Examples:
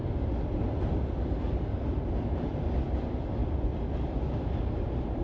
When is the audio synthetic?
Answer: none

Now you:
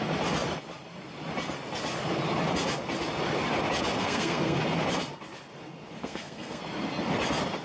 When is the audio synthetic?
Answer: 4.0-4.6 (codec, SNAC); 6.0-6.6

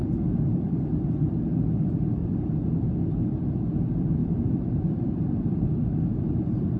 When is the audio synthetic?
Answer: 0.0-1.4 (vocoder, BigVGAN v2); 2.2-3.1; 4.2-6.8

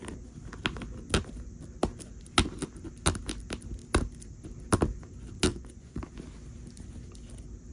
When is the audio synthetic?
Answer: 5.5-6.0 (vocoder, Vocos)

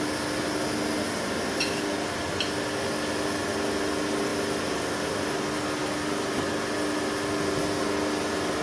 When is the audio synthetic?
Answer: none